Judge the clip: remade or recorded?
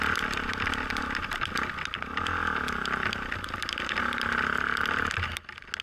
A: recorded